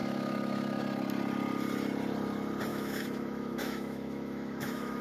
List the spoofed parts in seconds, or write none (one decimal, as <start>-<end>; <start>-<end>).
0.0-0.8; 2.7-5.0